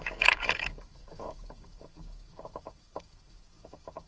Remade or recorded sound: remade